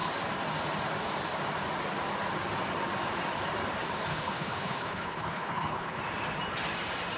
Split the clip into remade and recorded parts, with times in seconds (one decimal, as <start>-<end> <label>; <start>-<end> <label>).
0.0-4.1 recorded; 4.1-6.0 remade; 6.0-7.2 recorded